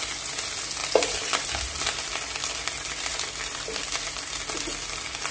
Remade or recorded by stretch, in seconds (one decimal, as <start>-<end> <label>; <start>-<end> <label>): 0.0-0.8 recorded; 0.8-1.5 remade; 1.5-3.1 recorded; 3.1-3.8 remade; 3.8-5.3 recorded